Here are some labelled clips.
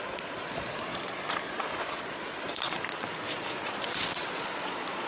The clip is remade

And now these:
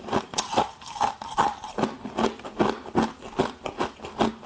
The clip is recorded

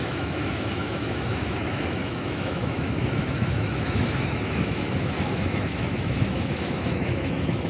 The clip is remade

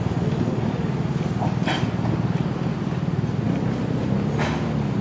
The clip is recorded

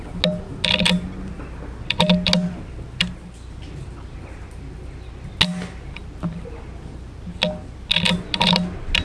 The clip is recorded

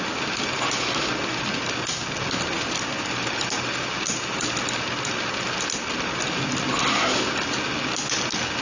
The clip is recorded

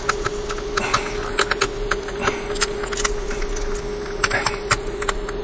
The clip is recorded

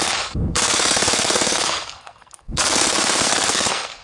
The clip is remade